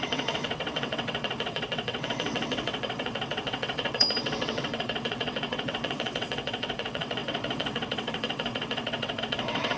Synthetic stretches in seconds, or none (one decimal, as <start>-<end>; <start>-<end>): 0.0-9.8